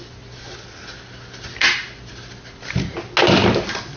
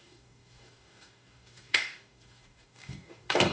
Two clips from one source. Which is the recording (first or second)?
first